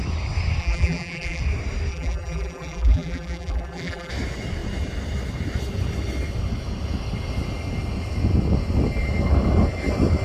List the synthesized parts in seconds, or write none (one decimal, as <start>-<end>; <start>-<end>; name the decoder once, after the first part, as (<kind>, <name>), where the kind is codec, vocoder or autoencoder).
0.6-1.4 (vocoder, BigVGAN v2); 1.9-4.1